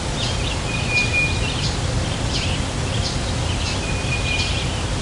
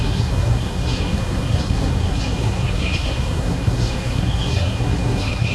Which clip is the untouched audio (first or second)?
first